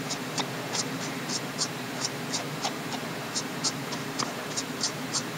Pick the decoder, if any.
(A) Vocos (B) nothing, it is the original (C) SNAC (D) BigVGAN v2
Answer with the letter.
D